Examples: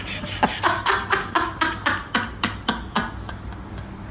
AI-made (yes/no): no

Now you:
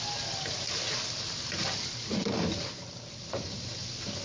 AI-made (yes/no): yes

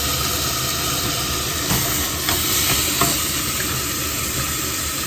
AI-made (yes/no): no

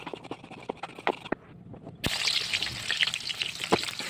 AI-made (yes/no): no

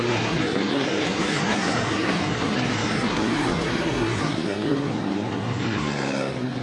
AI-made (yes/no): yes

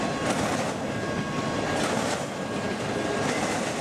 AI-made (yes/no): no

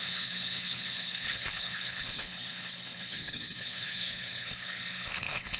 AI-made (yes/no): yes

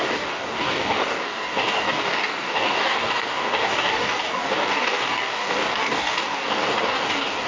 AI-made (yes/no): yes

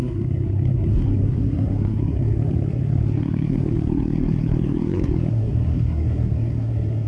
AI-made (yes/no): yes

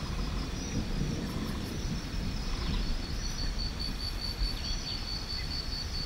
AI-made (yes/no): no